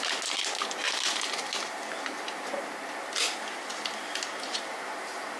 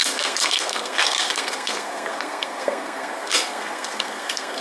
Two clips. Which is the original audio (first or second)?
first